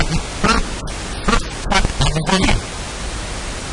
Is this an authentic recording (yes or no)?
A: yes